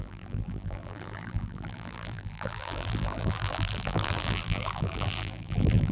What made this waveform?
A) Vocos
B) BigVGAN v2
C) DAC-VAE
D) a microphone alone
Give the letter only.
B